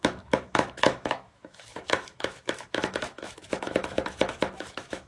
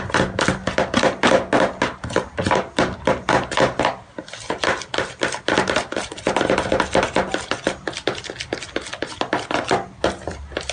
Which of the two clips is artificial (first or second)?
first